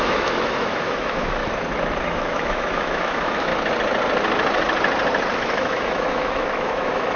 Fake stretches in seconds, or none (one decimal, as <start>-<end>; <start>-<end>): 0.0-1.4; 2.0-3.5; 5.3-7.2